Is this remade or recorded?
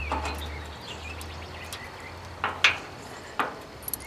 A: recorded